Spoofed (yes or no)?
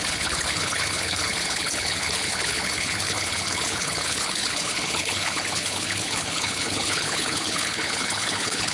yes